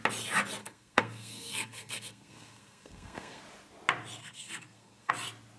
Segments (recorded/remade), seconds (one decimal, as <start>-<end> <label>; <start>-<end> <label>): 0.0-0.6 recorded; 0.6-3.4 remade; 3.4-4.2 recorded; 4.2-5.1 remade; 5.1-5.6 recorded